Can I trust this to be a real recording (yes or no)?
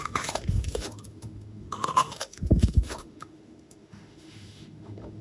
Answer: no